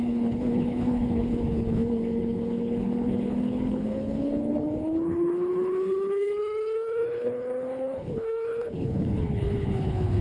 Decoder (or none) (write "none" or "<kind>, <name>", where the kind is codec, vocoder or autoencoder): codec, HILCodec